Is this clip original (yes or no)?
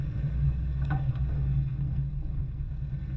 no